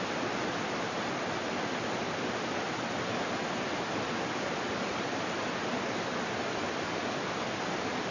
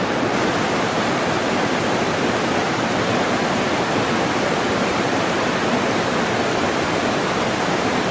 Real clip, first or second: first